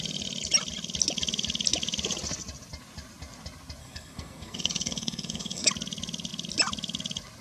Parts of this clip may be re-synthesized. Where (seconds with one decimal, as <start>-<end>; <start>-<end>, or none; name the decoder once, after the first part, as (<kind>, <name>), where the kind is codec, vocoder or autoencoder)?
3.8-5.7 (codec, SNAC)